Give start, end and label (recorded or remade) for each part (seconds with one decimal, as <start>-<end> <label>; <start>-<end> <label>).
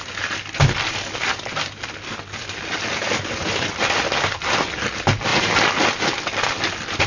0.0-7.1 recorded